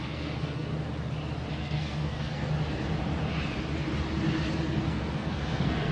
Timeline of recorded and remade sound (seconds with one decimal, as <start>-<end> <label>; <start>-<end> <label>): 0.0-0.7 remade; 0.7-1.5 recorded; 1.5-2.5 remade; 2.5-4.8 recorded; 4.8-5.9 remade